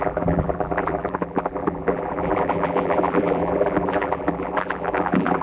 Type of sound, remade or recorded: remade